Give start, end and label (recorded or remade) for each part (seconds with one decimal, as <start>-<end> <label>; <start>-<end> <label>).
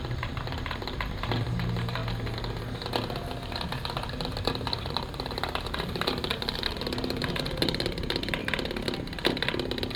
0.0-2.0 remade; 2.0-3.3 recorded; 3.3-8.4 remade; 8.4-10.0 recorded